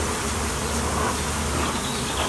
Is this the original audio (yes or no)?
yes